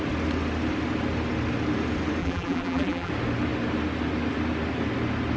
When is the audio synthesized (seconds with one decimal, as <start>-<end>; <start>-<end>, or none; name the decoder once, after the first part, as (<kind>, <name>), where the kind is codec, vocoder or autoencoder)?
2.2-3.1 (vocoder, BigVGAN v2)